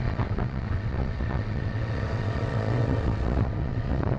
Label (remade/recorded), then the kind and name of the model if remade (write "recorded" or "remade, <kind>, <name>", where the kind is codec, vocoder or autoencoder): remade, vocoder, WaveNeXt